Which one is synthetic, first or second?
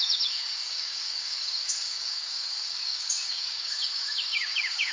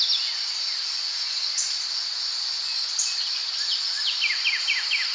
first